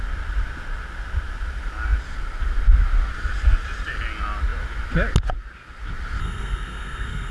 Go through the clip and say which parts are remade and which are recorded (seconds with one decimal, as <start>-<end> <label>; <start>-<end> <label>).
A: 0.0-6.2 recorded; 6.2-7.3 remade